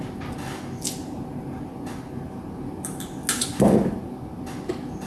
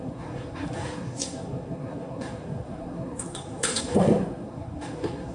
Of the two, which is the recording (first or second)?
first